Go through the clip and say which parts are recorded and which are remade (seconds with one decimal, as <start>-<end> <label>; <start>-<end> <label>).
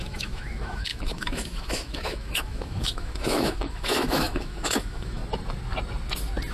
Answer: 0.0-5.2 remade; 5.2-6.5 recorded